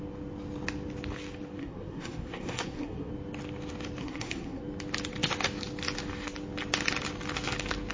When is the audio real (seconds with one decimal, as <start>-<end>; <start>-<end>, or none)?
0.0-1.6; 3.1-4.0; 4.6-7.9